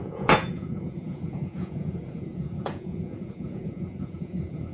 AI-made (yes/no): yes